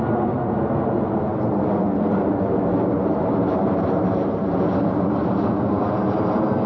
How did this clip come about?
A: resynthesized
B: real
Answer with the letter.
B